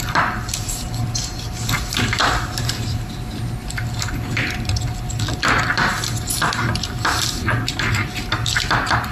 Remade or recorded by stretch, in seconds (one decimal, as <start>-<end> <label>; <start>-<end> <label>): 0.0-9.1 recorded